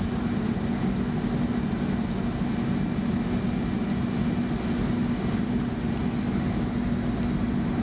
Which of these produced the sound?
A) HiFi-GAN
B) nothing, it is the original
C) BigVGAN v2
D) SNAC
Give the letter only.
B